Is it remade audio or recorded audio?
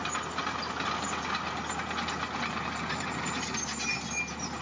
recorded